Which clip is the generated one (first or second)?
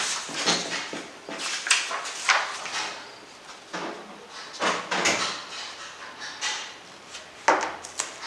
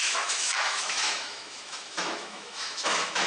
second